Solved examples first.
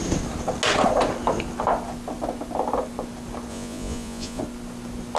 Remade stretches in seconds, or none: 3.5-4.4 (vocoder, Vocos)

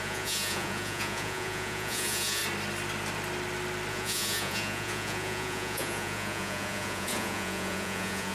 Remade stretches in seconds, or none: 0.0-2.4 (vocoder, Vocos); 3.9-8.3

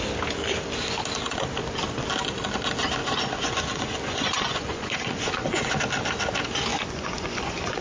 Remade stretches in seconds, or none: 3.0-5.8 (vocoder, Vocos); 6.7-7.8

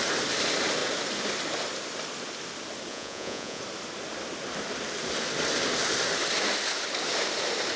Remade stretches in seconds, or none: 2.9-3.6 (vocoder, Vocos)